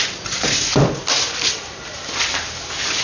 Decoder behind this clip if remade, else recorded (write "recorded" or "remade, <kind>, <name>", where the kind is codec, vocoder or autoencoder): recorded